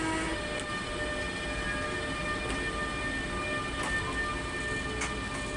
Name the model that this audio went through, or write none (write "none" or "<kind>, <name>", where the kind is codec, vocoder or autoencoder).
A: none